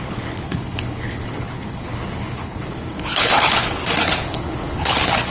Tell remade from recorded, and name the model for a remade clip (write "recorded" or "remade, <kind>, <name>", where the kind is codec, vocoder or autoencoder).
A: remade, codec, HILCodec